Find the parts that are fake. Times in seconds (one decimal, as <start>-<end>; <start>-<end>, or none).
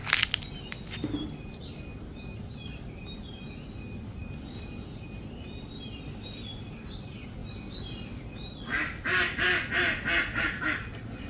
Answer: none